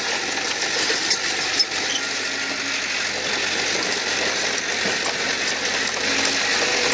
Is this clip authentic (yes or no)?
yes